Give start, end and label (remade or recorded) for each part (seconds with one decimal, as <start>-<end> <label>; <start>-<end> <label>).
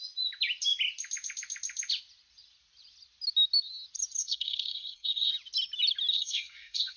0.0-4.2 recorded; 4.2-5.3 remade; 5.3-6.1 recorded; 6.1-7.0 remade